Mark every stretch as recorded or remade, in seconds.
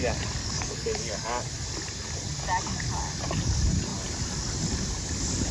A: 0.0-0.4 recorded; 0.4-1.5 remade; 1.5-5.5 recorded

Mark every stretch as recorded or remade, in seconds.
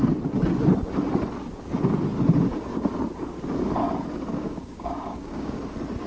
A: 0.0-4.3 recorded; 4.3-5.6 remade; 5.6-6.1 recorded